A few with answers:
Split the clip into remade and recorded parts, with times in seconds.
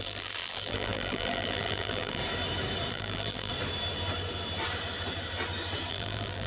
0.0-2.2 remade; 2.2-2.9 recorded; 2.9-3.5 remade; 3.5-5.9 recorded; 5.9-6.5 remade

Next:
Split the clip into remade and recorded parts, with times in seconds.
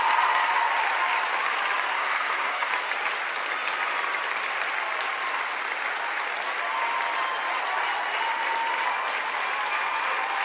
0.0-1.9 recorded; 1.9-2.7 remade; 2.7-10.4 recorded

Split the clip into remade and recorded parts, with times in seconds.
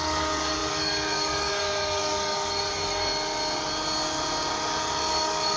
0.0-3.1 remade; 3.1-5.1 recorded; 5.1-5.6 remade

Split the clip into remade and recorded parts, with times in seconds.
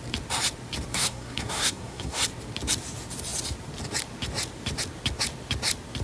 0.0-0.9 recorded; 0.9-2.2 remade; 2.2-6.0 recorded